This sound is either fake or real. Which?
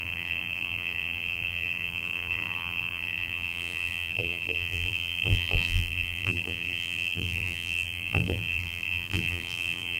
fake